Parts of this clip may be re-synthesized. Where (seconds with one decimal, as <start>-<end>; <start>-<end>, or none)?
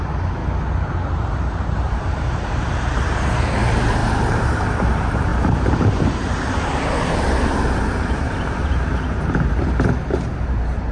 0.0-0.4; 1.1-10.9